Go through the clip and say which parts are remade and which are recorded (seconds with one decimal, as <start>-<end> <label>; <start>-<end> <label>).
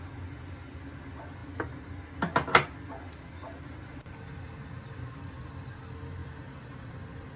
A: 0.0-6.2 recorded; 6.2-6.9 remade; 6.9-7.4 recorded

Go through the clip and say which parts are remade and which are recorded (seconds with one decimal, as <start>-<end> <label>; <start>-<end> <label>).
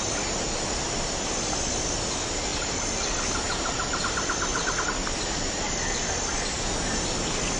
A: 0.0-2.5 recorded; 2.5-4.0 remade; 4.0-4.5 recorded; 4.5-6.6 remade; 6.6-7.6 recorded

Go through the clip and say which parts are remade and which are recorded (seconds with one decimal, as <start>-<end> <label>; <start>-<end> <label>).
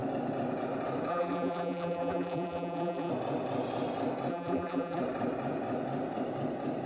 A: 0.0-1.1 recorded; 1.1-3.1 remade; 3.1-4.3 recorded; 4.3-5.0 remade; 5.0-6.9 recorded